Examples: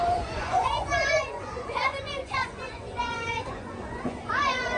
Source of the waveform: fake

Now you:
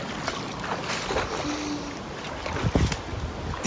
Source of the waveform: real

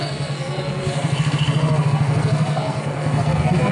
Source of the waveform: fake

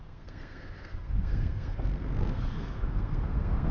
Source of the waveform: fake